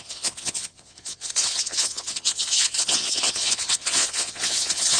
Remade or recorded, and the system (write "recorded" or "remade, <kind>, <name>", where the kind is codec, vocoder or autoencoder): remade, vocoder, Vocos